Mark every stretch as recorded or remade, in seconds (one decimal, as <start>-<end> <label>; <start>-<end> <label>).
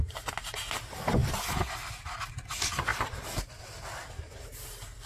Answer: 0.0-5.1 recorded